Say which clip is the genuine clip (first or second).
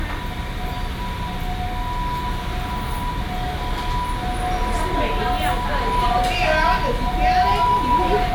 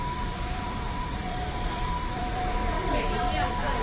first